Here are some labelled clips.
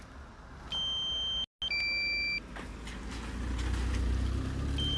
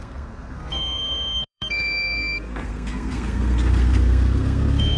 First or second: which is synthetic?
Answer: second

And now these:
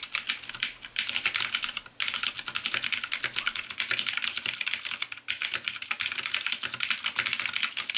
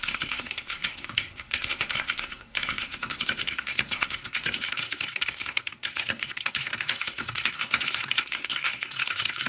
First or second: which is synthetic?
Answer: second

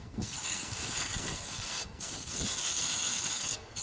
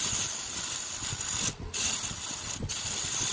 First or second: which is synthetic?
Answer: first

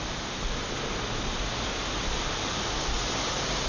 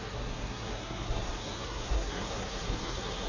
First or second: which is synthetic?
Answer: second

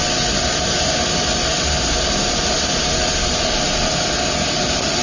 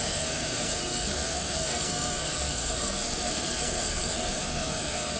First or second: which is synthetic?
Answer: second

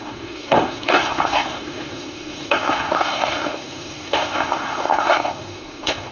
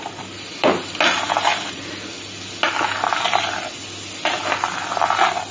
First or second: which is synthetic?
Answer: first